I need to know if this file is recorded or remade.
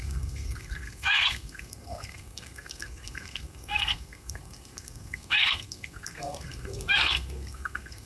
remade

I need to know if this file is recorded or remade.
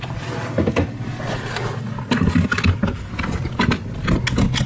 recorded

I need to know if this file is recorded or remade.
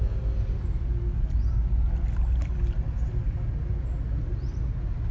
recorded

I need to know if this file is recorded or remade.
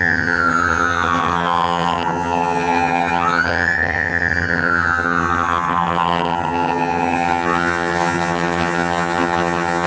remade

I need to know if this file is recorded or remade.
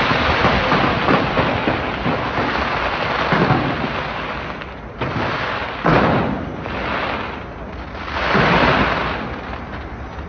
recorded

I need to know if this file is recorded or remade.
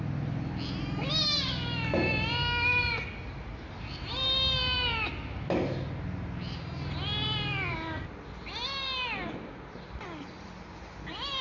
recorded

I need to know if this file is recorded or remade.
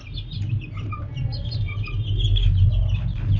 recorded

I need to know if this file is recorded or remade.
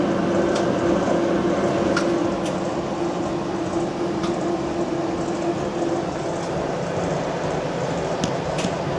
recorded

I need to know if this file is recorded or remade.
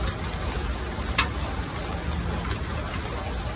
recorded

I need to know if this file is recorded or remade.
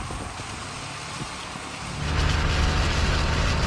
recorded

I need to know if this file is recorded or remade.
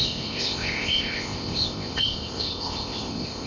remade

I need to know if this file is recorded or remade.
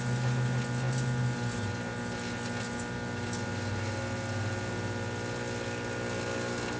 recorded